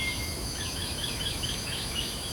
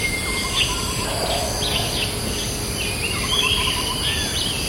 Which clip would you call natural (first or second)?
second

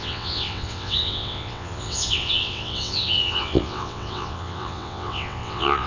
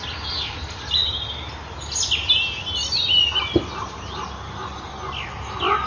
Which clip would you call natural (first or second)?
second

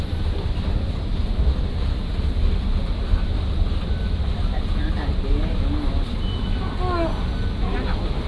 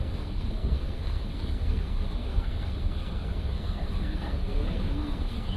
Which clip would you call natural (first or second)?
first